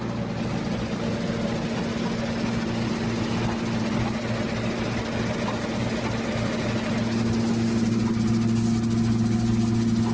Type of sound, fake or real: real